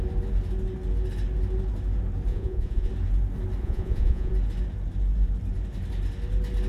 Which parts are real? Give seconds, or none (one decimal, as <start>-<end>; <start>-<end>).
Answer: 0.0-2.3; 2.9-3.6; 4.3-6.7